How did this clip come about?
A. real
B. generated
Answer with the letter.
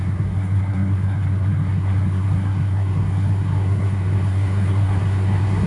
B